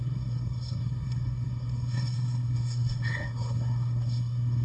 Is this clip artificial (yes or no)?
yes